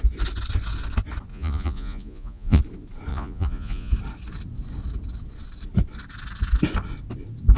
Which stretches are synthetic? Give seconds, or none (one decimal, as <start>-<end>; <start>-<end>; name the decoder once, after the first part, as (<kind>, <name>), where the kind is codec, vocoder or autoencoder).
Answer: 1.3-2.6 (vocoder, Vocos); 3.1-3.9